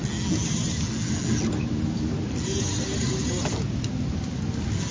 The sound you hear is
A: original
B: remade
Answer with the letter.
A